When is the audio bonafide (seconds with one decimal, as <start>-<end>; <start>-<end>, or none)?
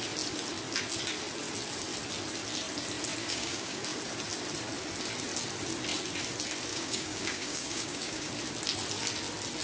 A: 0.0-3.2; 3.8-6.7; 8.3-9.6